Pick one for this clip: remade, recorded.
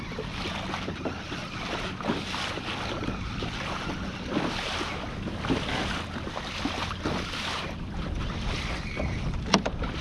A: recorded